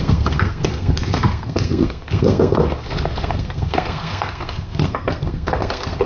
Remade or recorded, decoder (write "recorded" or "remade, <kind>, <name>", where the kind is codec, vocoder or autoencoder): remade, codec, SNAC